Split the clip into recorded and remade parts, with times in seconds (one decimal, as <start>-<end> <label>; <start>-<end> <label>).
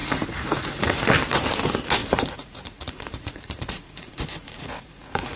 0.0-1.0 remade; 1.0-2.0 recorded; 2.0-5.4 remade